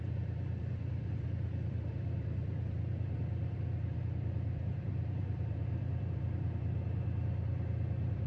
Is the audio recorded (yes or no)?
no